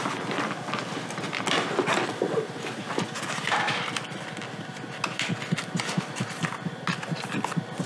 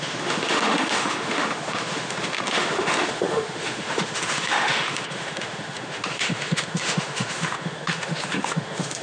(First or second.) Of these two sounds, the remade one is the second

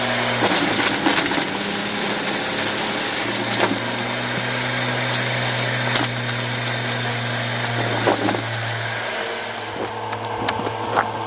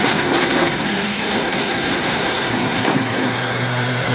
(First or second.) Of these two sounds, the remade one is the second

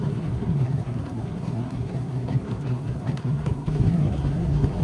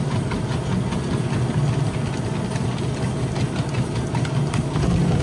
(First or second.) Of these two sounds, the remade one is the first